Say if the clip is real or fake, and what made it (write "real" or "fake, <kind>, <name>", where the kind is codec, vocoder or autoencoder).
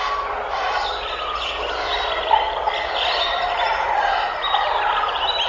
real